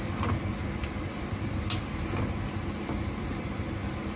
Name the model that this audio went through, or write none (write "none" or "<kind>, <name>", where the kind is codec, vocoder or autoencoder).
none